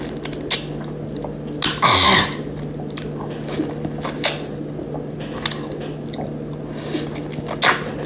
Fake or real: real